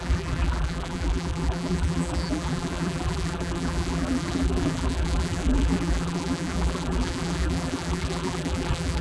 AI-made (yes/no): yes